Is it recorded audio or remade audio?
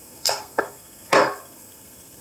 remade